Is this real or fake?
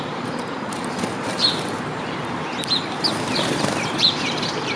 fake